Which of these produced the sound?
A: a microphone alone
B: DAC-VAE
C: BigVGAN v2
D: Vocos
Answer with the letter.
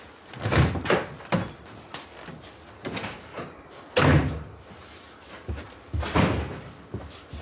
A